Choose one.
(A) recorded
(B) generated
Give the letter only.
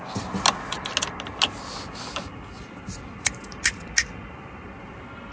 A